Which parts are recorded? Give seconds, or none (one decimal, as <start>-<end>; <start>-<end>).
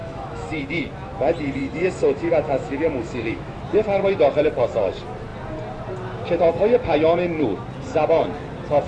0.6-1.6; 3.6-8.9